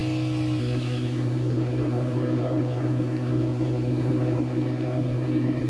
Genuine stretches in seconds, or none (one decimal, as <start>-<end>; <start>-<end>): 0.0-0.6